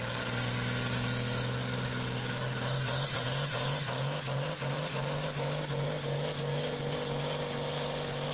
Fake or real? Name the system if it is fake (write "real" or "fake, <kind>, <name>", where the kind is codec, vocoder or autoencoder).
real